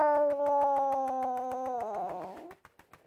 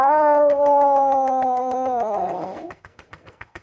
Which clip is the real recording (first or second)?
first